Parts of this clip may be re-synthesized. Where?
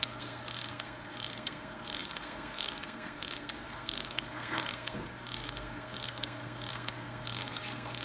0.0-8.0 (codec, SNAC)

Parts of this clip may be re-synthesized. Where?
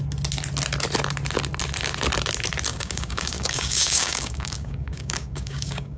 2.7-6.0 (codec, DAC)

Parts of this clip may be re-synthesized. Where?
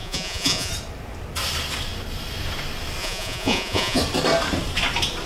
0.0-0.7 (vocoder, Vocos); 3.0-4.0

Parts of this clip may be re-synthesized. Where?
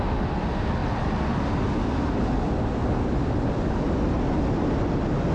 none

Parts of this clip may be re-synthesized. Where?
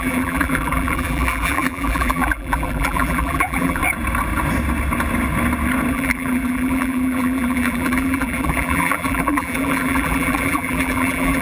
0.0-3.8 (vocoder, BigVGAN v2); 5.9-11.4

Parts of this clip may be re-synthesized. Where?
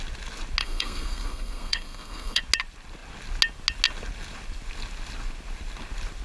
0.6-2.4 (codec, SNAC)